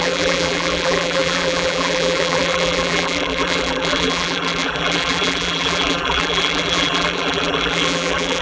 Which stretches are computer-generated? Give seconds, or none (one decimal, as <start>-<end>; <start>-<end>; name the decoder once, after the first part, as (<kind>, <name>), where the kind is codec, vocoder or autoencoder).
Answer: 0.0-8.4 (vocoder, BigVGAN v2)